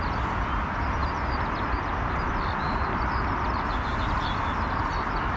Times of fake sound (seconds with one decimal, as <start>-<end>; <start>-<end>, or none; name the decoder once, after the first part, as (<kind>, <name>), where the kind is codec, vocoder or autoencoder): none